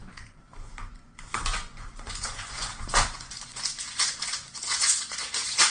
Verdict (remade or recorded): remade